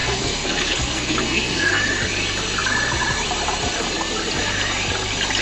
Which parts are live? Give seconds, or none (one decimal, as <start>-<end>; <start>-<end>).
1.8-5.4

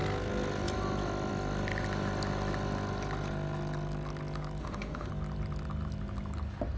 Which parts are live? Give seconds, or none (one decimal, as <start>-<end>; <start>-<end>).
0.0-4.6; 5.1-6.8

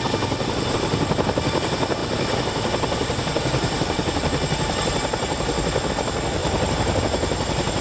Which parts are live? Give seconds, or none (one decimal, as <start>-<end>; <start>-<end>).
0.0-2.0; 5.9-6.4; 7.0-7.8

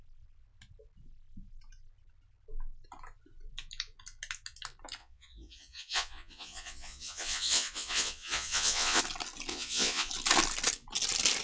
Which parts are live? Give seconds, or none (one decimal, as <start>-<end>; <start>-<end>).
0.0-5.0; 9.0-9.5; 10.1-11.4